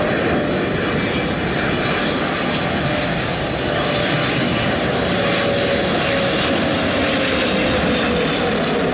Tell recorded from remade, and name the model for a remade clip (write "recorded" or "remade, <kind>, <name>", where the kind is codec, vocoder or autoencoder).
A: recorded